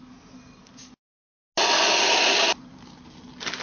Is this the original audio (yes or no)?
yes